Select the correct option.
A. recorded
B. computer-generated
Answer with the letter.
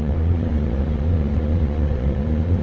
B